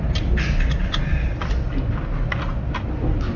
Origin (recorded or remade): recorded